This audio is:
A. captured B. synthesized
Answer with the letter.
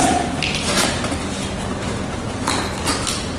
A